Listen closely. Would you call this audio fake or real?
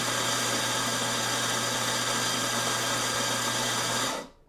real